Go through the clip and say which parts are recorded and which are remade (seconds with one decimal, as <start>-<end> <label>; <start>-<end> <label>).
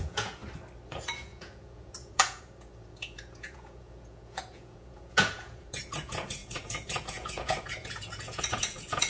0.0-0.4 remade; 0.4-0.9 recorded; 0.9-9.1 remade